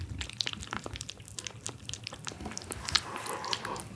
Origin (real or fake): real